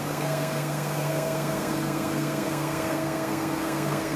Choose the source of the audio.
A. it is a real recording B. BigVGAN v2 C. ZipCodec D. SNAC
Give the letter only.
D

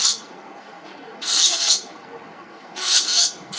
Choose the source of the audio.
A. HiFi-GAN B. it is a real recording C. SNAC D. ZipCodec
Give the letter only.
C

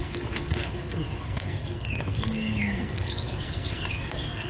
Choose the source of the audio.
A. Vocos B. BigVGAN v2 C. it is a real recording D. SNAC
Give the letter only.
D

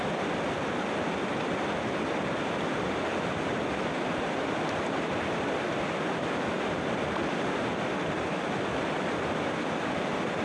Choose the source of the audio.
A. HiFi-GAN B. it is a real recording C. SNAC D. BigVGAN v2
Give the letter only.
B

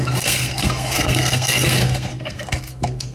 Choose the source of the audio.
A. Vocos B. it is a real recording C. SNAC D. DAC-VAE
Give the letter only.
C